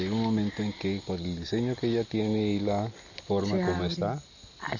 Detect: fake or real real